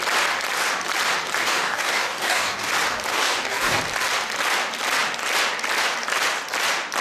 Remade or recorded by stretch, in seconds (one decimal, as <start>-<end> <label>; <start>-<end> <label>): 0.0-1.4 recorded; 1.4-2.7 remade; 2.7-3.1 recorded; 3.1-3.8 remade; 3.8-7.0 recorded